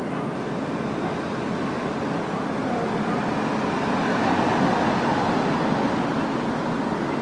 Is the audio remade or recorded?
recorded